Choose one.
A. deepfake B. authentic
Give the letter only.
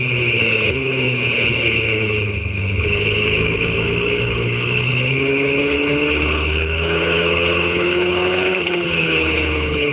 A